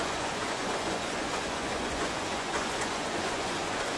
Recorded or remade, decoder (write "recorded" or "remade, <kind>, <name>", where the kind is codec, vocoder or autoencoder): remade, vocoder, Vocos